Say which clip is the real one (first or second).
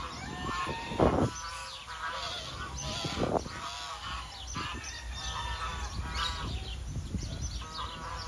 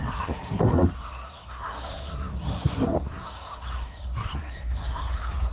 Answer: first